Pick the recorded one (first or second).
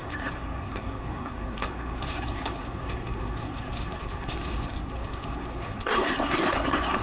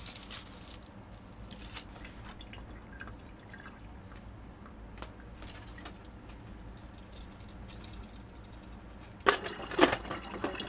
second